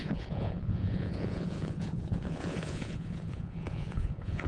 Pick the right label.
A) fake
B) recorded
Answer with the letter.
A